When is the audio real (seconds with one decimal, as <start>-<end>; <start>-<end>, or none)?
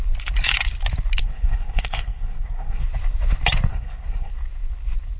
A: 0.0-1.2; 2.8-3.7; 4.3-5.2